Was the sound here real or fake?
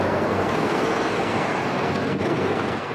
fake